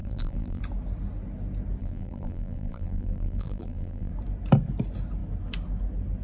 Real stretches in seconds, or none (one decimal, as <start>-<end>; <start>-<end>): 0.6-1.8; 4.1-6.2